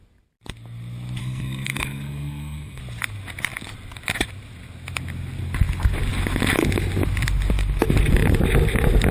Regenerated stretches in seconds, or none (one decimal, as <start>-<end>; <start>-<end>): 1.2-2.8